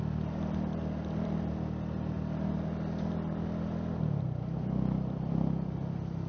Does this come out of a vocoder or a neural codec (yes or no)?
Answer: no